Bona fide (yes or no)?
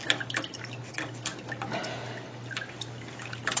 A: yes